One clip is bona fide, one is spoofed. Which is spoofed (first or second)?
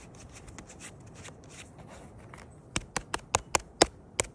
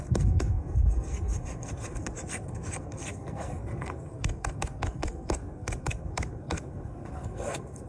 second